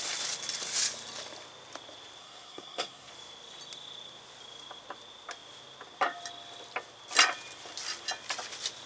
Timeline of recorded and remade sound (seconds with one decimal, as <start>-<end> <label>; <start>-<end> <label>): 0.0-2.2 recorded; 2.2-3.1 remade; 3.1-8.9 recorded